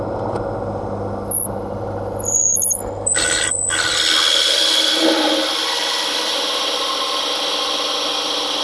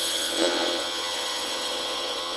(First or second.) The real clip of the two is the first